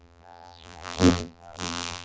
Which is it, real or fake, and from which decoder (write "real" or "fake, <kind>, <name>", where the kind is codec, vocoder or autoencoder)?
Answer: fake, vocoder, BigVGAN v2